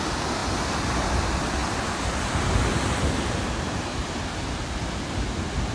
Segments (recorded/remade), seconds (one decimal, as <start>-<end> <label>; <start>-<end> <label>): 0.0-5.7 recorded